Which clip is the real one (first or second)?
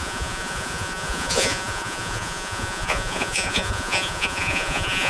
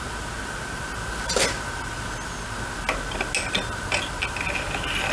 second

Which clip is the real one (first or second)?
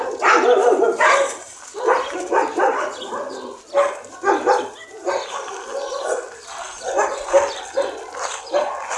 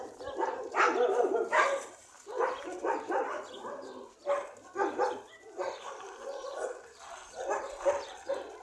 first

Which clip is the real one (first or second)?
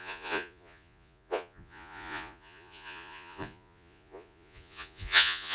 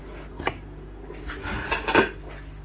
second